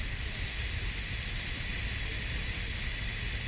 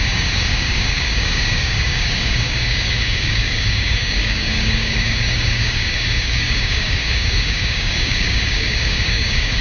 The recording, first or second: first